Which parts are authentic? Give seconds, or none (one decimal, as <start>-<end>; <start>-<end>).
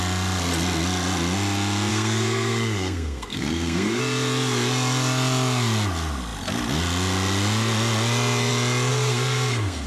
0.0-1.9; 4.0-8.9